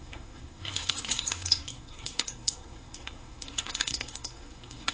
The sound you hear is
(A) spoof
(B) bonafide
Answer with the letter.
A